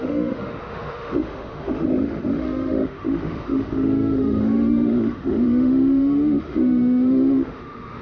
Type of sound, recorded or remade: remade